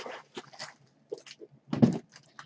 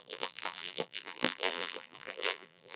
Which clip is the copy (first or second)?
second